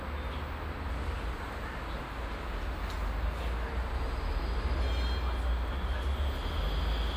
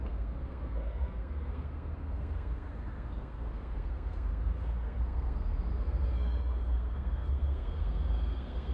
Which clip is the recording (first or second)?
first